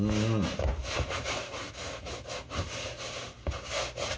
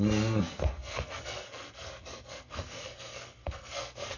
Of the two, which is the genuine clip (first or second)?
first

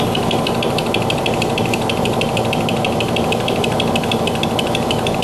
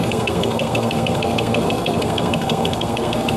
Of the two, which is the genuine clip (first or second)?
first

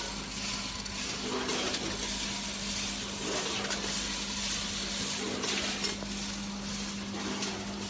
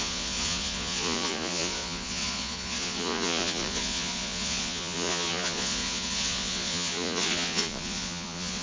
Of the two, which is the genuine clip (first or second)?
first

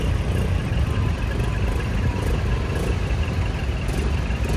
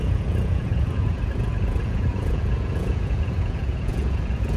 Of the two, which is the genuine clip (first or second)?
first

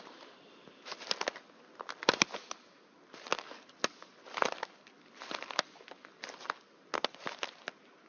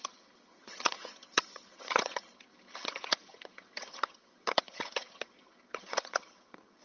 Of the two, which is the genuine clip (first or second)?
first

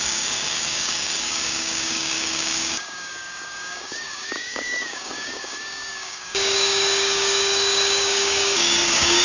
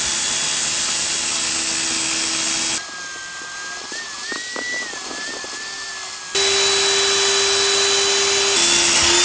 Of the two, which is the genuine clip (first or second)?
second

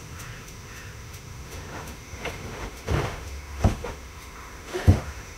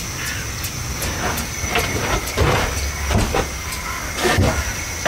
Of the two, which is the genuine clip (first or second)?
second